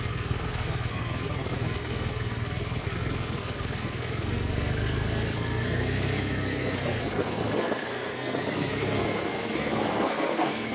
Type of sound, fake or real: fake